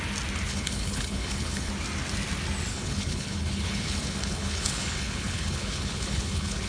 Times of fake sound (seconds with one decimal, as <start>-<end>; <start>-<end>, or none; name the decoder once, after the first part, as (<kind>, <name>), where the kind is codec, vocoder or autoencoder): 0.5-1.7 (codec, HILCodec); 2.7-6.7